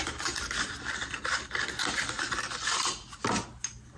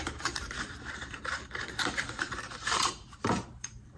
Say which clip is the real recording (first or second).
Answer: first